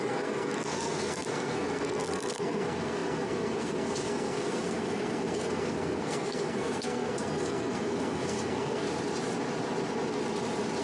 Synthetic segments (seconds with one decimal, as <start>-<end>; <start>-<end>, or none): 0.0-8.8